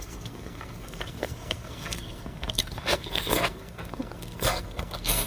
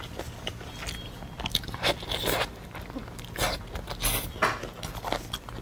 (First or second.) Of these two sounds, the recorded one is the second